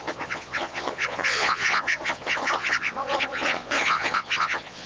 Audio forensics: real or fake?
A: fake